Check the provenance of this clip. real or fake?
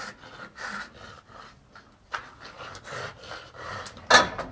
real